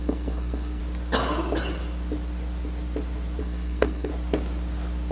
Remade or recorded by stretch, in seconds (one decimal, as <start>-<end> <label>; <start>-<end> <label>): 0.0-0.8 remade; 0.8-3.4 recorded; 3.4-4.1 remade; 4.1-5.1 recorded